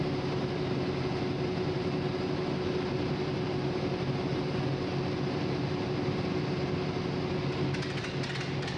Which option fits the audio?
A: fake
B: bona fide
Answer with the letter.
B